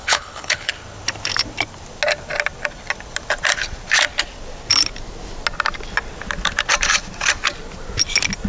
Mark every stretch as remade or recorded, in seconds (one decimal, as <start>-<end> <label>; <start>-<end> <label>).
0.0-0.7 remade; 0.7-8.5 recorded